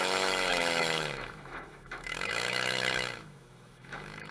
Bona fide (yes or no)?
no